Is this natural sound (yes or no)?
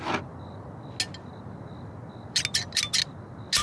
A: yes